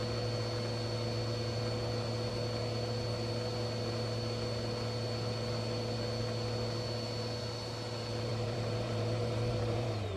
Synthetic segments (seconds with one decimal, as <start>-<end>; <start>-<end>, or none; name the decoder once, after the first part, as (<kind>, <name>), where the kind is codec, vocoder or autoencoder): 8.3-10.2 (vocoder, BigVGAN v2)